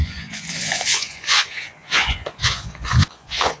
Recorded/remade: remade